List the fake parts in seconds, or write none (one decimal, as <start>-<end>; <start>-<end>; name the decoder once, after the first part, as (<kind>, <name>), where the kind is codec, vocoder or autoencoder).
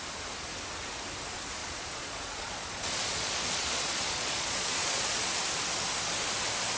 1.6-5.4 (vocoder, Vocos)